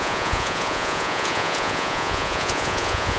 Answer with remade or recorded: remade